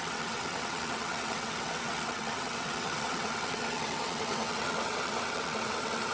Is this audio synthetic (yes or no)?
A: yes